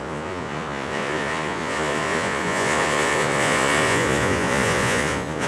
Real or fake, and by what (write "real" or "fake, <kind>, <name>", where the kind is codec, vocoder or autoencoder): fake, vocoder, Vocos